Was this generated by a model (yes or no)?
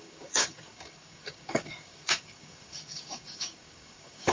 yes